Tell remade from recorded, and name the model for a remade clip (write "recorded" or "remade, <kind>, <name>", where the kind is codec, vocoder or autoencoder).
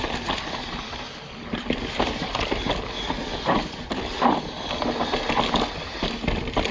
recorded